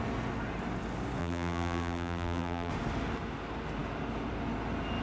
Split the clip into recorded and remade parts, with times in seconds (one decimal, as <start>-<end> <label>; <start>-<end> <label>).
0.0-1.2 recorded; 1.2-2.7 remade; 2.7-5.0 recorded